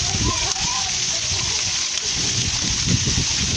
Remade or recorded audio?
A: remade